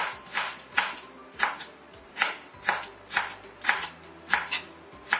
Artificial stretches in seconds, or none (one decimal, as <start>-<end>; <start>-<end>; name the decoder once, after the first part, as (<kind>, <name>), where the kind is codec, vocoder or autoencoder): none